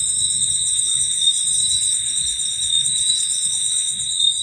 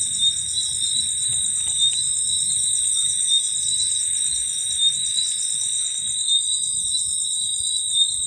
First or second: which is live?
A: second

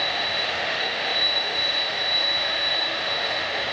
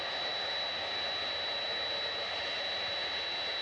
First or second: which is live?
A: second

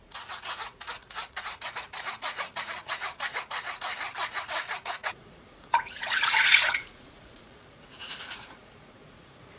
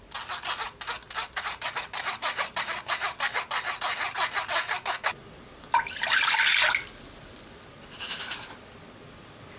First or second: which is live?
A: second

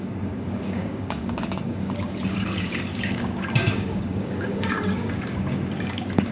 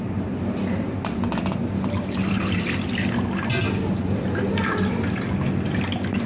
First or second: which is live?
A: second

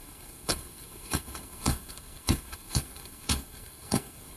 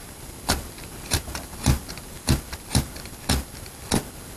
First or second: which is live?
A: second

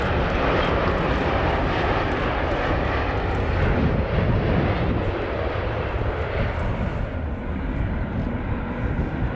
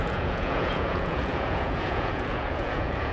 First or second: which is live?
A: first